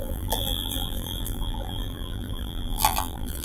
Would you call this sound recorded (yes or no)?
no